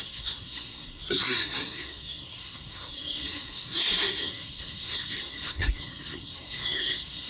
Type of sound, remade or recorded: remade